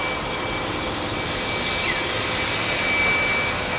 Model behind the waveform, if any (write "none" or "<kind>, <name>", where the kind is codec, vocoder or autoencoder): none